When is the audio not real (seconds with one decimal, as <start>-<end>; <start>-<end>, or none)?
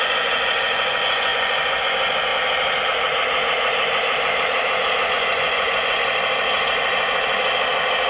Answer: 0.0-2.3; 5.1-6.0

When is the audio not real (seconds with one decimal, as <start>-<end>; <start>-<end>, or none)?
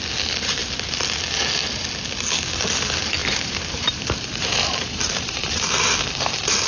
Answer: 3.2-5.4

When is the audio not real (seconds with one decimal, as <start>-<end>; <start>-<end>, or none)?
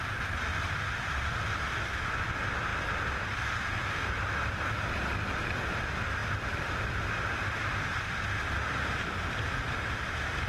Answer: 0.5-2.1; 6.2-10.5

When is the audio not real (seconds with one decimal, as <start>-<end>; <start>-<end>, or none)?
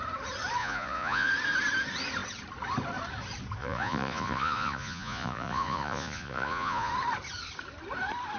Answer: 0.6-1.3; 3.6-6.9